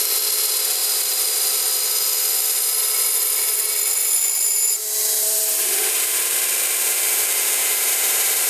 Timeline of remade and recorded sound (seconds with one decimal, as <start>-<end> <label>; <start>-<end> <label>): 0.0-0.8 recorded; 0.8-1.6 remade; 1.6-5.0 recorded; 5.0-5.6 remade; 5.6-7.6 recorded; 7.6-8.5 remade